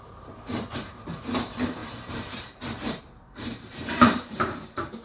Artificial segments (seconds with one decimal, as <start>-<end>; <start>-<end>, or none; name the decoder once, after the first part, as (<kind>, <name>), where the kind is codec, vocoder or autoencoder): 0.0-5.0 (vocoder, BigVGAN v2)